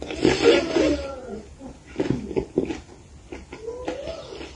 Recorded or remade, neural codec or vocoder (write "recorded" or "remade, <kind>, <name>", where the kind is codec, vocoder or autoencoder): recorded